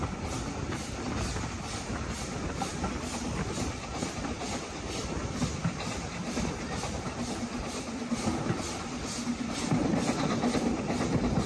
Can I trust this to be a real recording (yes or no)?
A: yes